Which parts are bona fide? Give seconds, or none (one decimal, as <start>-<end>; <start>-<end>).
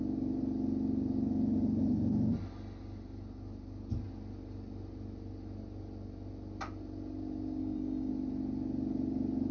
0.0-7.6; 8.1-9.5